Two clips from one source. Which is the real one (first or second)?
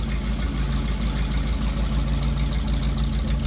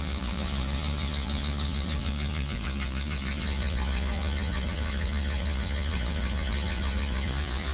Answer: first